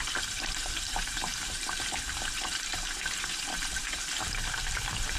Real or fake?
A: fake